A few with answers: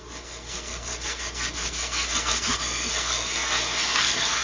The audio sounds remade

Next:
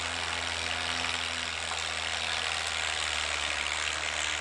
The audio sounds recorded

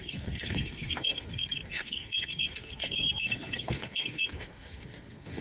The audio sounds remade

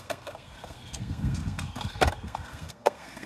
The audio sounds remade